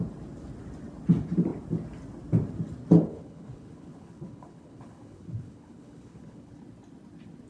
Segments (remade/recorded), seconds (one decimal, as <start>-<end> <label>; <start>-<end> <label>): 0.0-3.1 recorded; 3.1-6.5 remade; 6.5-7.5 recorded